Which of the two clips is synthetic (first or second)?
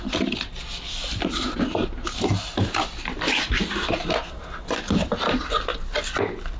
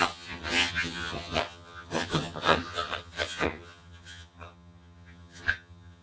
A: second